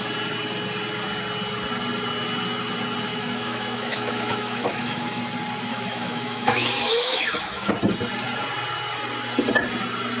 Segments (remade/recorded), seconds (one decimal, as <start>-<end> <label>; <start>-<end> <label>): 0.0-3.1 recorded; 3.1-5.2 remade; 5.2-5.7 recorded; 5.7-7.7 remade; 7.7-10.2 recorded